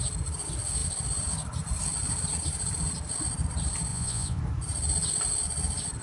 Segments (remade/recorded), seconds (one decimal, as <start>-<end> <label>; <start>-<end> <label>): 0.0-3.9 recorded; 3.9-4.4 remade; 4.4-6.0 recorded